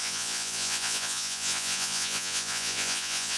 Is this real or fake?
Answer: fake